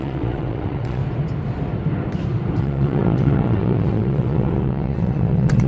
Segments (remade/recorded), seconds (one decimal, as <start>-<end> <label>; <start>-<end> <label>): 0.0-1.0 remade; 1.0-2.6 recorded; 2.6-5.7 remade